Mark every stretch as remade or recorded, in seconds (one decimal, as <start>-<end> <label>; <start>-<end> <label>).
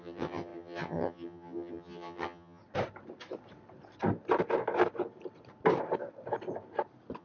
0.0-2.6 remade; 2.6-7.2 recorded